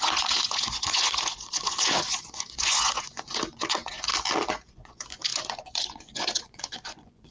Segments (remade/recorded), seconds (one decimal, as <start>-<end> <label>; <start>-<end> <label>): 0.0-4.1 remade; 4.1-4.7 recorded; 4.7-7.3 remade